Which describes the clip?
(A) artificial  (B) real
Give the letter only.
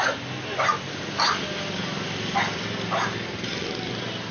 B